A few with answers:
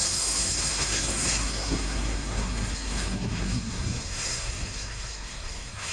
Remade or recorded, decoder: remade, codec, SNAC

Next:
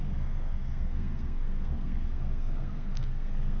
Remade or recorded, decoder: remade, codec, SNAC